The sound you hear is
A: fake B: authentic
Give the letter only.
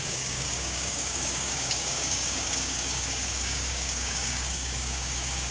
A